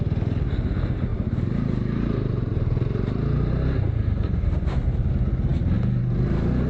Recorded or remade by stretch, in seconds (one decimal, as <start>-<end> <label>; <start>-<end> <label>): 0.0-1.1 recorded; 1.1-5.1 remade; 5.1-6.7 recorded